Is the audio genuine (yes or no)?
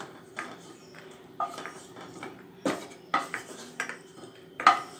no